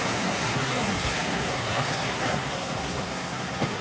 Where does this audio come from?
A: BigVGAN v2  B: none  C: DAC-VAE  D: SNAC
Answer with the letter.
D